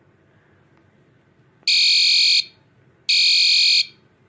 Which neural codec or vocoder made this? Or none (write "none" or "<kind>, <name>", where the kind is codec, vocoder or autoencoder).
none